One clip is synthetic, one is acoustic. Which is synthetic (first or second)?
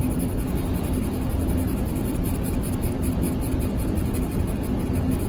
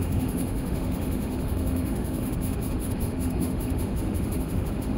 second